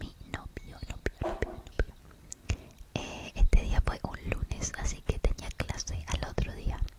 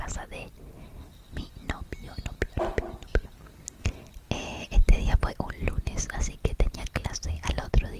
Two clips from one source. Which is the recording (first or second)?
second